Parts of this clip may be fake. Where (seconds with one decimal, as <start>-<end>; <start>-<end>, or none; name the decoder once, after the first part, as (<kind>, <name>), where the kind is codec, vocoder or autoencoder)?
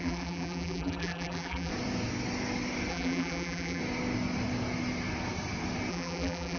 0.0-1.7 (vocoder, BigVGAN v2); 2.9-3.8; 5.9-6.6